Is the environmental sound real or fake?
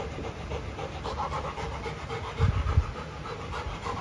fake